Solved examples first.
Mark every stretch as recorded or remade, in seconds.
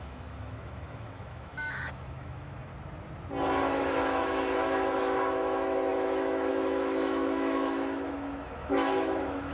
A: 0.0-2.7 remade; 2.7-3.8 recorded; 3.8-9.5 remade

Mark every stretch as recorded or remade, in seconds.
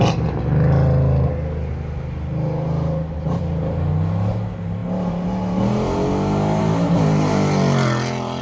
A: 0.0-8.4 recorded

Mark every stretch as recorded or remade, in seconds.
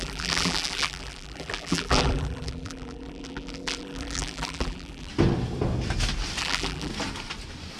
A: 0.0-5.1 remade; 5.1-6.4 recorded; 6.4-6.9 remade; 6.9-7.8 recorded